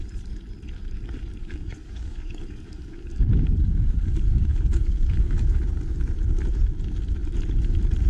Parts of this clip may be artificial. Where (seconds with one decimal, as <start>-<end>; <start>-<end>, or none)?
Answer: 1.4-5.6

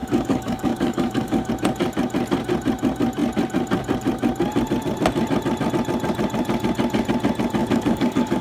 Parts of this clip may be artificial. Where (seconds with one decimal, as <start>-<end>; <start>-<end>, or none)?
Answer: 0.0-1.5; 7.6-8.4

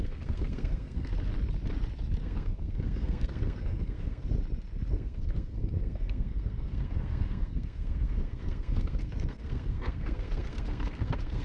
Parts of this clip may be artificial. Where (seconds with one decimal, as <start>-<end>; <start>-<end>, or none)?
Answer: 0.0-1.1; 2.2-4.2; 4.9-11.4

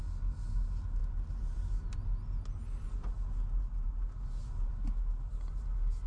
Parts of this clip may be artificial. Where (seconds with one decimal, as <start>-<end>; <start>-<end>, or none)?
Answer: none

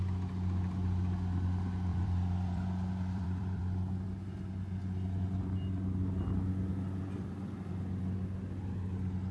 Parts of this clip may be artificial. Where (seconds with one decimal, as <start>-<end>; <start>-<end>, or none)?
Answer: 1.9-3.6; 6.7-7.5